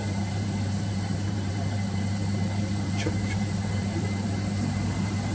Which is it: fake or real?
fake